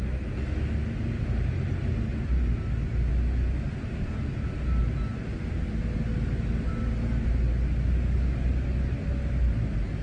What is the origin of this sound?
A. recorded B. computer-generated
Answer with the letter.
A